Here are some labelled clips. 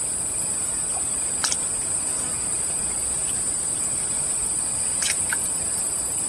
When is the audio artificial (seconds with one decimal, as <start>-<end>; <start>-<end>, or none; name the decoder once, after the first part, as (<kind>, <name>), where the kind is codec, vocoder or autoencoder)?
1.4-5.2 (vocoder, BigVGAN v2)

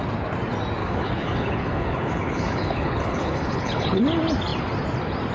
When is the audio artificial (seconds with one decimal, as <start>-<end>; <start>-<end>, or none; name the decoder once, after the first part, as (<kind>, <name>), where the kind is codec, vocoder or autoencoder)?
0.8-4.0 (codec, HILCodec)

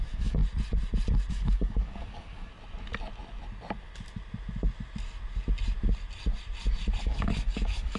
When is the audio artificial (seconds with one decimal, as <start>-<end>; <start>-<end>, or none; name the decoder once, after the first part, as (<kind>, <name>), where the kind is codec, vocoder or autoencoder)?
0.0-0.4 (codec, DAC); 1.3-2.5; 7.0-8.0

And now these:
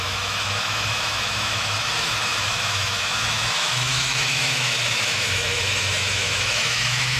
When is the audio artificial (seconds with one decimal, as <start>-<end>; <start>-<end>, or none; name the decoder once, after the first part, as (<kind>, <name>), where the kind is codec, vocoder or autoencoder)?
0.0-7.2 (autoencoder, DAC-VAE)